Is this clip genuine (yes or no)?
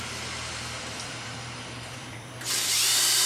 no